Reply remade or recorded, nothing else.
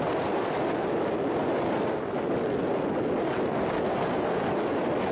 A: recorded